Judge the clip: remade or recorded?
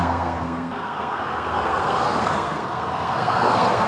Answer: remade